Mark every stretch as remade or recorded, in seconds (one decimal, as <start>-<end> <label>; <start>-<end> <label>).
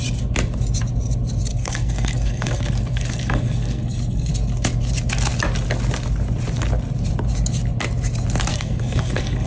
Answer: 0.0-1.5 recorded; 1.5-4.3 remade; 4.3-8.5 recorded; 8.5-9.5 remade